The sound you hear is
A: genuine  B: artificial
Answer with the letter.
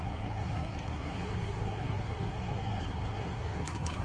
B